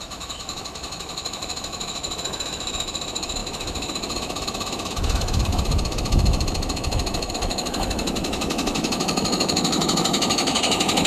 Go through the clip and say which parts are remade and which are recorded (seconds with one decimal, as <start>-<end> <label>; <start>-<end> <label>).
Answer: 0.0-11.1 remade